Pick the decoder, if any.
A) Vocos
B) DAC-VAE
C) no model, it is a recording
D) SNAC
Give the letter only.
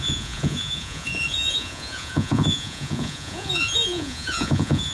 A